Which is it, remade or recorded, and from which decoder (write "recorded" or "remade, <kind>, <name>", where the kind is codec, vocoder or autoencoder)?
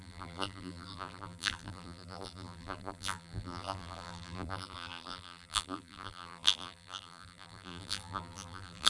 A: remade, vocoder, BigVGAN v2